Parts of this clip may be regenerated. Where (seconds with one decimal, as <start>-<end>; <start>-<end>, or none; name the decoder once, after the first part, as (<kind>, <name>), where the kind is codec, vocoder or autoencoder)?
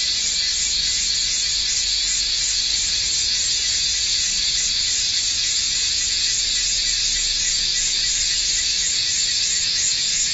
0.5-1.1 (vocoder, BigVGAN v2); 4.1-5.4